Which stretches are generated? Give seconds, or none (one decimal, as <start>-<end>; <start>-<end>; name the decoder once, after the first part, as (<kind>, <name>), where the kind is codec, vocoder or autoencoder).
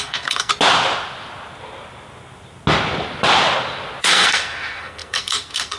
0.0-0.5 (codec, SNAC); 4.0-5.8